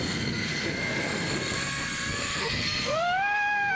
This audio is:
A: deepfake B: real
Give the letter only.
A